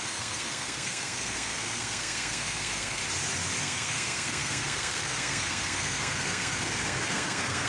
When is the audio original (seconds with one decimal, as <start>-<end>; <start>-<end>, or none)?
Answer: 3.0-3.6